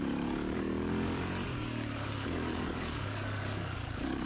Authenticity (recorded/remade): remade